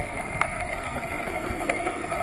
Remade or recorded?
remade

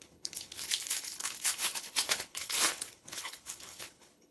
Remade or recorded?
remade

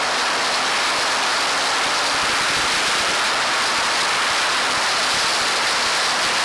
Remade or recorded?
recorded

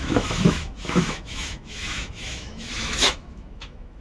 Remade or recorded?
remade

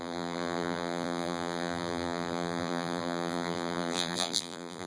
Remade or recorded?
remade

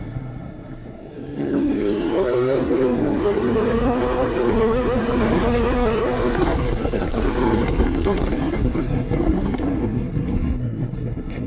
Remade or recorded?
remade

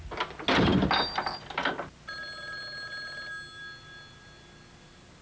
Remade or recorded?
recorded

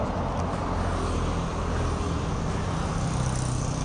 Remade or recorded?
recorded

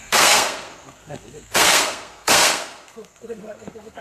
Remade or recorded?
remade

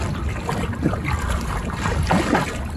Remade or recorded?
recorded